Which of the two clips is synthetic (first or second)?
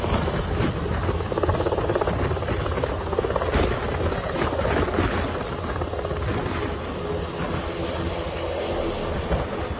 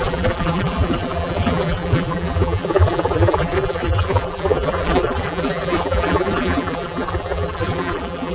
second